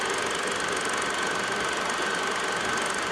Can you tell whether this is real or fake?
real